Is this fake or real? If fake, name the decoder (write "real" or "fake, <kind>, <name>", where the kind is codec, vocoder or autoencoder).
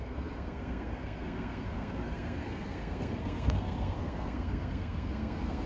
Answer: fake, codec, SNAC